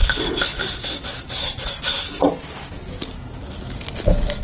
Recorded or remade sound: recorded